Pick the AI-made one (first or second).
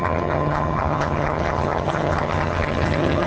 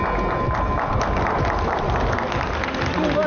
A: first